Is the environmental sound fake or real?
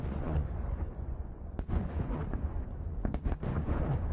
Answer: fake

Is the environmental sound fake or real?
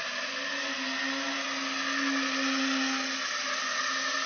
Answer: real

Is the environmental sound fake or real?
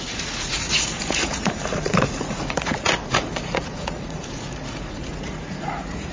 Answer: fake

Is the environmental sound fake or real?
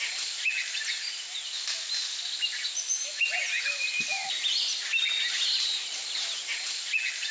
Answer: real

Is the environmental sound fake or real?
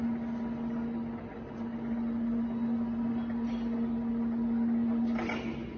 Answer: real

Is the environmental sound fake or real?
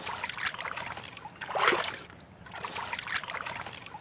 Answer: real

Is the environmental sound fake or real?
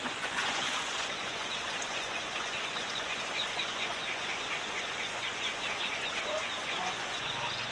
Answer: fake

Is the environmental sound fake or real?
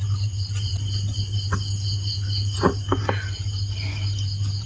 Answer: real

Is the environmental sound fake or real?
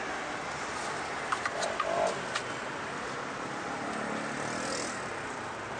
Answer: real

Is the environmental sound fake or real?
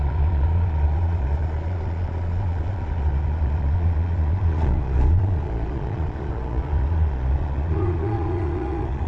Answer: fake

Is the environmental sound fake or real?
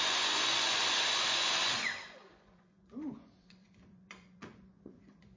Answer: fake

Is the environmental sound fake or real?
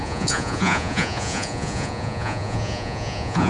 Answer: fake